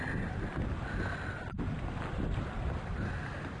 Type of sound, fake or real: real